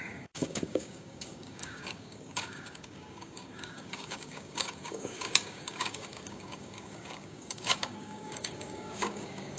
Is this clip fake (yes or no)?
yes